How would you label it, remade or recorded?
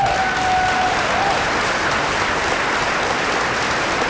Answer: recorded